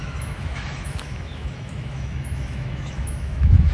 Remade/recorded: remade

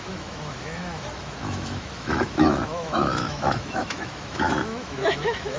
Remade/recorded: remade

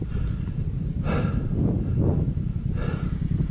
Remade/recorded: recorded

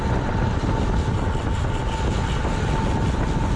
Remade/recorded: recorded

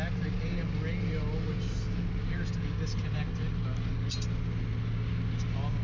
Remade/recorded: recorded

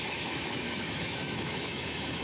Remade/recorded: remade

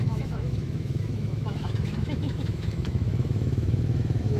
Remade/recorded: remade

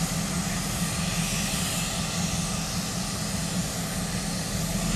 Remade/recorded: recorded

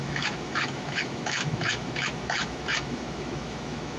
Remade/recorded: remade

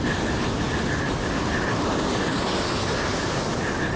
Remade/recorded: recorded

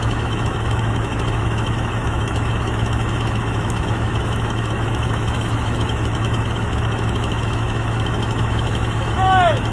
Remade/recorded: remade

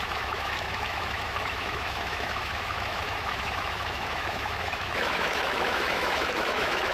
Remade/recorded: remade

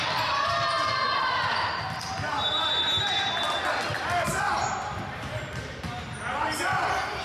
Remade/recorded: recorded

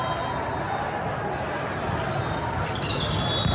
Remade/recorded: recorded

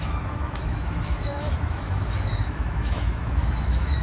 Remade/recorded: remade